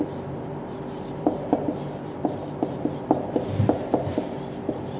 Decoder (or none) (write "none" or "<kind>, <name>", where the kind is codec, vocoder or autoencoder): vocoder, BigVGAN v2